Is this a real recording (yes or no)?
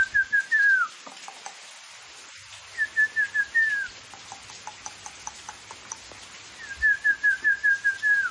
yes